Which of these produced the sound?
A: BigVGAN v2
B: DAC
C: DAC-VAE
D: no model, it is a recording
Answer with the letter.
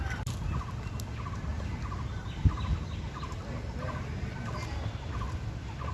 D